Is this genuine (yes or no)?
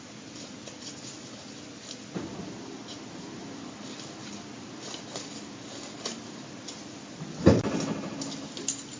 yes